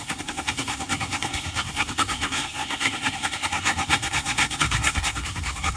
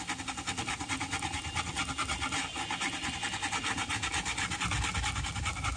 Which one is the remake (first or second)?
first